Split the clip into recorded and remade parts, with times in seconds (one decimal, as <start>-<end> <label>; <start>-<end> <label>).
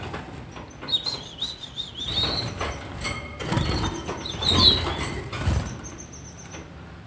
0.0-7.1 recorded